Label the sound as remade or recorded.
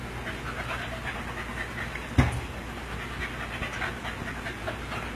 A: recorded